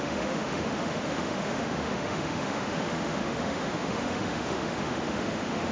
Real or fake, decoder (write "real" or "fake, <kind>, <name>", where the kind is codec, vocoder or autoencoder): fake, autoencoder, DAC-VAE